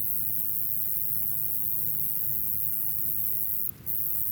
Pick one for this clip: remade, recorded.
recorded